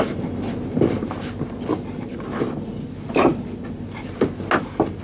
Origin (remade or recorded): recorded